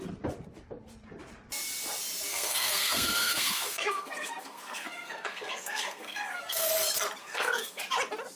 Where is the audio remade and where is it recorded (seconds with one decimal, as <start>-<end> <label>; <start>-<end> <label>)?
0.0-2.3 recorded; 2.3-6.7 remade; 6.7-7.2 recorded; 7.2-7.8 remade; 7.8-8.4 recorded